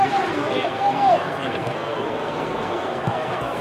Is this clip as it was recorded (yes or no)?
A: no